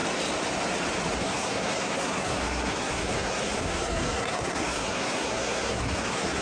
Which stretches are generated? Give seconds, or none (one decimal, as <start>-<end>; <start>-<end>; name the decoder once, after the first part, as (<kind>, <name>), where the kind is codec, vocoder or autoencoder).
1.2-6.4 (codec, SNAC)